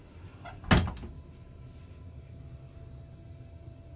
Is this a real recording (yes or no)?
yes